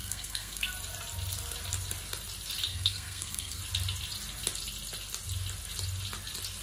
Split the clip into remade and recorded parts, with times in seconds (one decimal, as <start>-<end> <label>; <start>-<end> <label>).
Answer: 0.0-0.7 remade; 0.7-2.7 recorded; 2.7-3.6 remade; 3.6-6.6 recorded